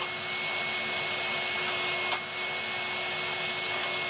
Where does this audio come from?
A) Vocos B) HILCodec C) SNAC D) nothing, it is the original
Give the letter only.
D